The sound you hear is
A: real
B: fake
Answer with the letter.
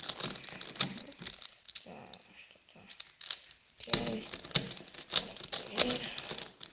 B